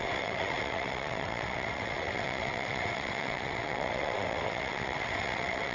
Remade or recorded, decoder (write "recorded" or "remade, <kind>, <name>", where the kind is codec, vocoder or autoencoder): remade, vocoder, WaveNeXt